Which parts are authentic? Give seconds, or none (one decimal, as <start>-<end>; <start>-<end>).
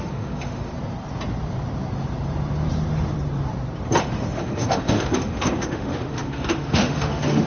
0.7-4.0